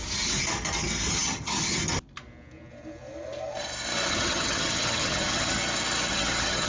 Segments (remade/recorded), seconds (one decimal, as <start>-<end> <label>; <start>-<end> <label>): 0.0-1.1 recorded; 1.1-1.8 remade; 1.8-4.1 recorded; 4.1-5.6 remade; 5.6-6.1 recorded; 6.1-6.7 remade